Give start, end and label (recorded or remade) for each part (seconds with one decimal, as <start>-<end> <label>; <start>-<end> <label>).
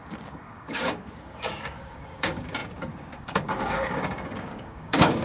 0.0-5.2 remade